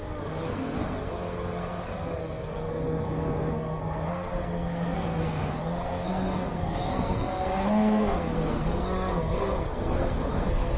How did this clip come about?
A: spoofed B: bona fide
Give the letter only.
A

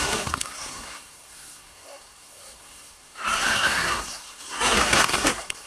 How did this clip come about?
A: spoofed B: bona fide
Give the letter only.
A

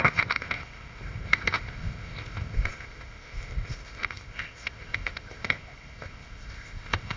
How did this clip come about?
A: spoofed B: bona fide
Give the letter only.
A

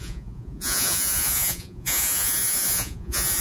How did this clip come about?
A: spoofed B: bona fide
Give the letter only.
A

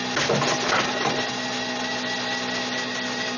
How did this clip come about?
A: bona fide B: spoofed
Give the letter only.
A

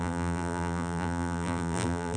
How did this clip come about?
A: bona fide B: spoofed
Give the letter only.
B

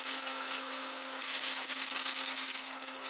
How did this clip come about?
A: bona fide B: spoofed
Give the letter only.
B